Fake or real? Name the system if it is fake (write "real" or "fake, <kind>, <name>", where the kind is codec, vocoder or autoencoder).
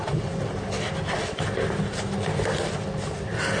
real